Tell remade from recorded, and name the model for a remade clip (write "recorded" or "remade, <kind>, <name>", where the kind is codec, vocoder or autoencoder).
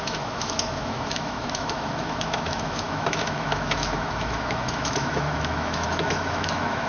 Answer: remade, autoencoder, DAC-VAE